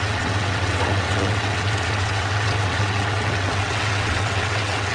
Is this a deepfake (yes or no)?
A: yes